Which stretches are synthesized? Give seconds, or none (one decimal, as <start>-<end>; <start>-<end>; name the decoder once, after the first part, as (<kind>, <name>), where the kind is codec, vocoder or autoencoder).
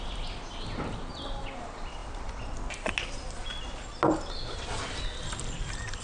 none